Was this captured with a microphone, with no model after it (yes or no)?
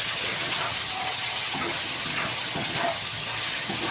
no